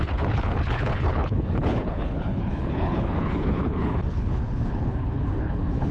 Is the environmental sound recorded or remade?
remade